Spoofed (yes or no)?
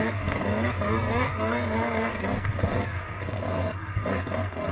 yes